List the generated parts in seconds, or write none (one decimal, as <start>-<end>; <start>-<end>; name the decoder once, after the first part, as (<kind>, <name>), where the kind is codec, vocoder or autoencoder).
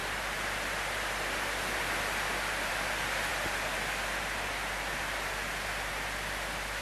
none